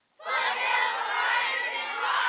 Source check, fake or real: real